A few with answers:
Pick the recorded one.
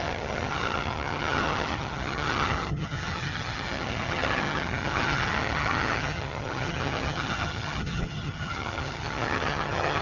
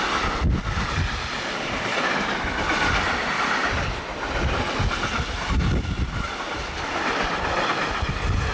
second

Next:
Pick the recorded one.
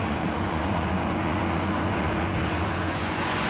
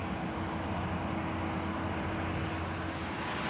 second